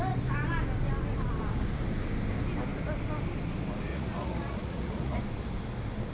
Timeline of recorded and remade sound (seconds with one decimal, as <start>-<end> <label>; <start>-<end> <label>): 0.0-3.9 recorded; 3.9-5.2 remade; 5.2-6.1 recorded